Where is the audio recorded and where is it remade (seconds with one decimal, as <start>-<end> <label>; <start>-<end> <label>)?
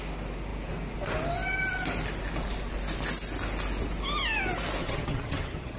0.0-4.8 recorded; 4.8-5.8 remade